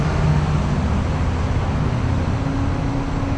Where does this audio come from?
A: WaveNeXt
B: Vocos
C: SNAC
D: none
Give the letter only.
D